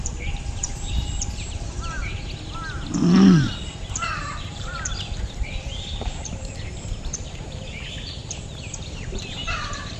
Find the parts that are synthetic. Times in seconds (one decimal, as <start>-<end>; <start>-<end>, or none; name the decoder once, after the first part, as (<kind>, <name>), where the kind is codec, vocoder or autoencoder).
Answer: 0.0-2.0 (vocoder, BigVGAN v2); 4.2-8.2; 9.0-10.0